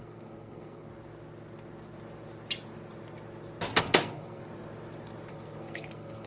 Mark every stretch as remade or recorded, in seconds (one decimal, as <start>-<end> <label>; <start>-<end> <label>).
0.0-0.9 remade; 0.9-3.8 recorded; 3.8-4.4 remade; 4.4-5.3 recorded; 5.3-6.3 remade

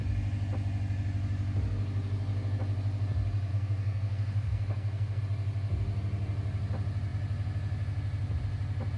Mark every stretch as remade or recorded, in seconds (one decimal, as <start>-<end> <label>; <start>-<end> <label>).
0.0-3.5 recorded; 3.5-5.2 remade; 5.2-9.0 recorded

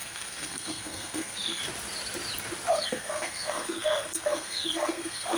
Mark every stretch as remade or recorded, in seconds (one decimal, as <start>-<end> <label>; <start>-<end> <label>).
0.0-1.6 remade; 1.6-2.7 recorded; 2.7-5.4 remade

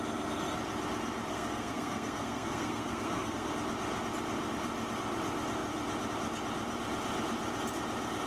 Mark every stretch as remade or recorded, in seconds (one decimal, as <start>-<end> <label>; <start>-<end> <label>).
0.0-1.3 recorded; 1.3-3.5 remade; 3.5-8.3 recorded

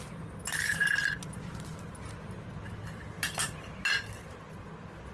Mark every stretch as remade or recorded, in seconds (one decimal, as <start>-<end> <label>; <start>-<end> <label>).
0.0-5.1 recorded

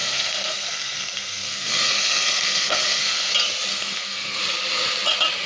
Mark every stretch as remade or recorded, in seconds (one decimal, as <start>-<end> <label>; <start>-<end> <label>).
0.0-3.3 remade; 3.3-3.7 recorded; 3.7-4.4 remade; 4.4-5.5 recorded